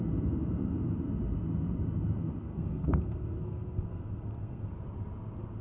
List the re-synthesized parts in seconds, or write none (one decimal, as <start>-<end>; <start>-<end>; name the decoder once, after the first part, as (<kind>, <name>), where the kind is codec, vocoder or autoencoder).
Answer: 2.5-4.7 (codec, SNAC)